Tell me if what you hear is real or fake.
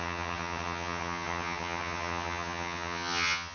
fake